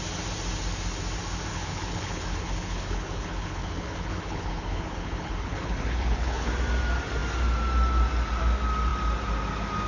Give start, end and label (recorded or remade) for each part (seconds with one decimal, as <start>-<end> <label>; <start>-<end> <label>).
0.0-1.5 recorded; 1.5-6.5 remade; 6.5-9.9 recorded